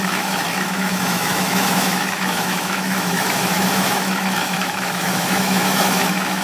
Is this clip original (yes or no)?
no